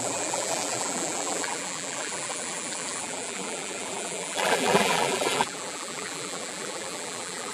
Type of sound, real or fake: fake